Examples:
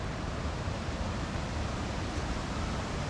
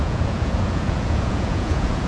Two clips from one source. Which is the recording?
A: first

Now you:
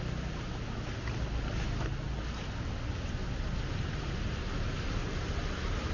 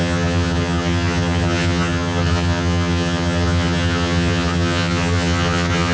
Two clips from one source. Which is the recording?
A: first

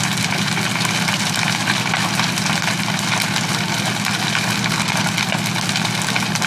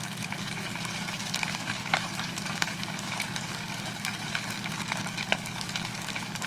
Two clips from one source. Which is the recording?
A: first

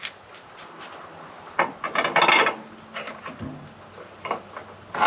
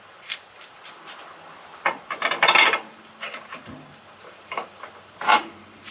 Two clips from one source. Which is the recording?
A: first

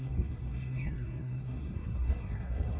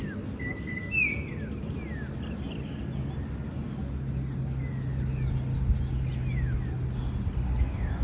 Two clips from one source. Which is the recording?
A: second